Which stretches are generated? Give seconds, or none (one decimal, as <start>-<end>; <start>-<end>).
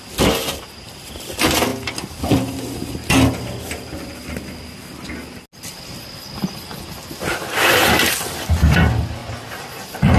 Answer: none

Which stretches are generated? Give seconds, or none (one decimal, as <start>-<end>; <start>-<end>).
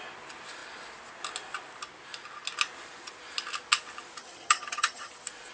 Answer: 4.2-5.1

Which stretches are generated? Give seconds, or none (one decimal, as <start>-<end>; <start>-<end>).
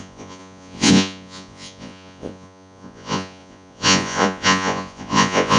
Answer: 0.0-5.6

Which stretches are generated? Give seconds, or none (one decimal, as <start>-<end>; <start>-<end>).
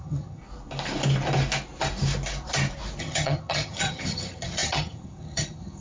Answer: 0.0-0.4; 3.0-5.8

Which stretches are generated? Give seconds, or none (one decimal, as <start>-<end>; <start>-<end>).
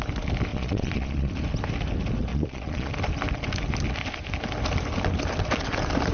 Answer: 0.5-1.3; 2.3-2.9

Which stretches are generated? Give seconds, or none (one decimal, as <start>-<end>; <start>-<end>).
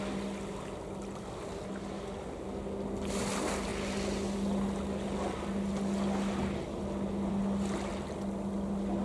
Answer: none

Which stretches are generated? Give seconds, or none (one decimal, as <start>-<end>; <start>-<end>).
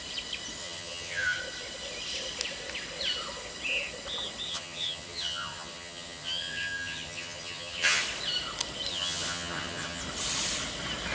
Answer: 0.6-1.4; 4.5-8.0; 8.9-10.0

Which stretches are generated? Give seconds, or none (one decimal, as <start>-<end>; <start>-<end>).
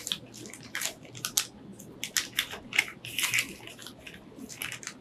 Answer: none